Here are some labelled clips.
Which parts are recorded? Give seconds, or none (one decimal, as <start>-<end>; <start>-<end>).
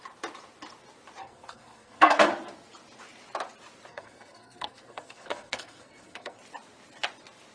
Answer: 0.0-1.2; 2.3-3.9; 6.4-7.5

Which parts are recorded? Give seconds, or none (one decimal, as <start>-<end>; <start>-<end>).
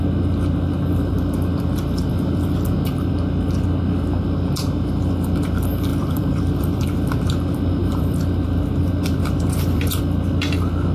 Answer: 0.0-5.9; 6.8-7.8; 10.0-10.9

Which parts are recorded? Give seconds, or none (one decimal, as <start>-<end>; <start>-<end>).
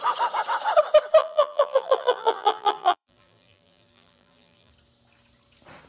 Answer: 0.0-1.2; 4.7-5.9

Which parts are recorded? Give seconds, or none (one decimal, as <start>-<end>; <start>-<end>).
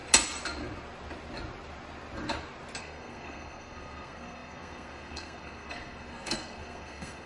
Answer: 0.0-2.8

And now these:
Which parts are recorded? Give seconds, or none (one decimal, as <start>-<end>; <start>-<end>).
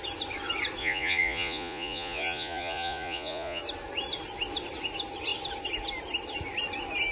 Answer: 0.0-0.8; 3.6-7.1